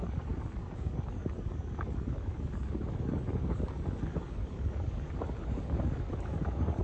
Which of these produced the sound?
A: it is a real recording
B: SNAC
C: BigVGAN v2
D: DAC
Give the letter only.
D